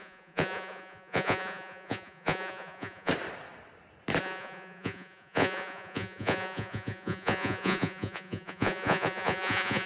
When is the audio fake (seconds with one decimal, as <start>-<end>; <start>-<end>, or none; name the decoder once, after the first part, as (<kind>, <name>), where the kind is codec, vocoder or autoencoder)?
0.0-3.1 (vocoder, Vocos); 4.2-9.9